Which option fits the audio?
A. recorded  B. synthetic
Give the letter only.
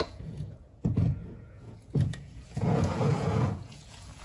B